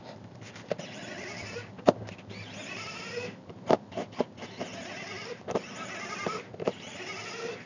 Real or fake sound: fake